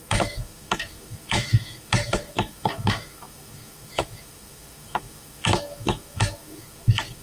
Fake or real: fake